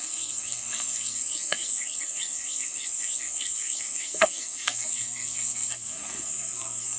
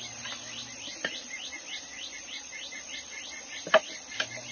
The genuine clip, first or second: second